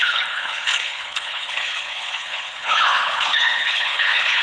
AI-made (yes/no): yes